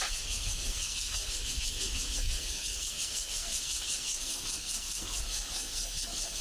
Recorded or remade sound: remade